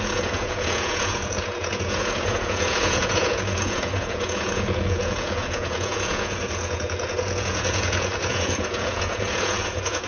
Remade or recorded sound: remade